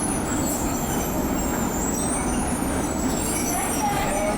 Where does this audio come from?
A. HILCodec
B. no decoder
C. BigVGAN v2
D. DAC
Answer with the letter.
B